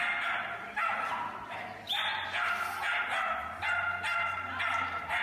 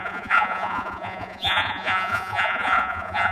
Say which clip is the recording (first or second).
first